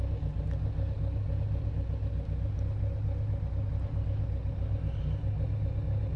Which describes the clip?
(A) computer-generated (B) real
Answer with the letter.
B